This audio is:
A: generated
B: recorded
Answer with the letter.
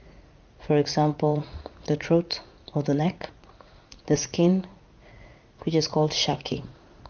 A